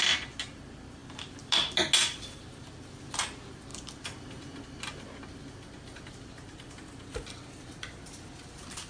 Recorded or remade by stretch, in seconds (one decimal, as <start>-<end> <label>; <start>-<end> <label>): 0.0-8.9 recorded